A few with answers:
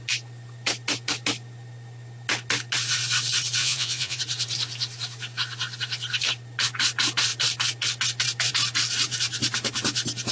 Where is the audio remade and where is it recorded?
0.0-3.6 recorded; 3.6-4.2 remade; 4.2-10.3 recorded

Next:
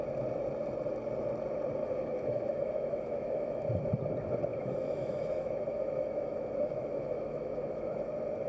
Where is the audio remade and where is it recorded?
0.0-1.8 recorded; 1.8-3.6 remade; 3.6-4.5 recorded; 4.5-8.0 remade; 8.0-8.5 recorded

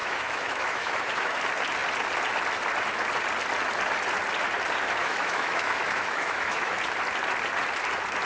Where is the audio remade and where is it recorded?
0.0-1.4 remade; 1.4-5.0 recorded; 5.0-6.8 remade; 6.8-8.3 recorded

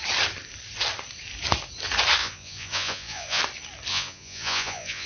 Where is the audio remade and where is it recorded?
0.0-2.2 recorded; 2.2-3.4 remade; 3.4-3.9 recorded; 3.9-5.1 remade

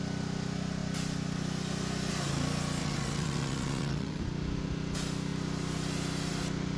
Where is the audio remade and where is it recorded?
0.0-2.8 recorded; 2.8-4.2 remade; 4.2-6.8 recorded